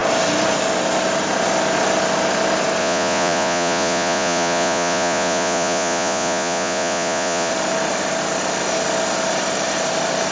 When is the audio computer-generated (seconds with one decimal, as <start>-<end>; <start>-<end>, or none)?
2.8-7.5